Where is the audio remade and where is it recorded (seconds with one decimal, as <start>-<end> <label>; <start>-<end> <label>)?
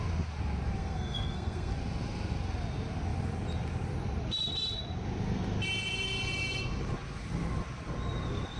0.0-0.8 recorded; 0.8-1.7 remade; 1.7-8.6 recorded